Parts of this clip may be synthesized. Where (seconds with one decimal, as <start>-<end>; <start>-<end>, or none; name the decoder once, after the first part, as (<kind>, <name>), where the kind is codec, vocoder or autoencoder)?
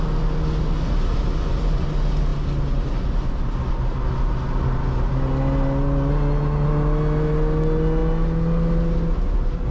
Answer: none